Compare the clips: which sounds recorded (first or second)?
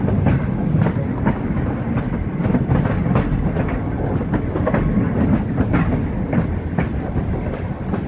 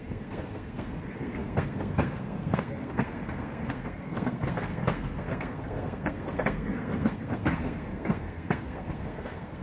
first